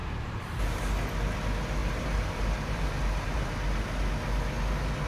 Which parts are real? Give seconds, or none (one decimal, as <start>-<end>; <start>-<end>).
0.8-1.8; 3.5-5.1